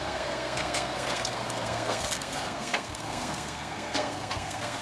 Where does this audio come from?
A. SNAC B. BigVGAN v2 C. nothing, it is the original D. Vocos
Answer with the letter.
A